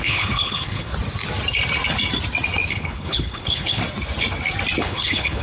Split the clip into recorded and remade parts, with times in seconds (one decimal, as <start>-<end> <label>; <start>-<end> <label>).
0.0-0.9 remade; 0.9-2.7 recorded; 2.7-3.8 remade; 3.8-4.8 recorded; 4.8-5.4 remade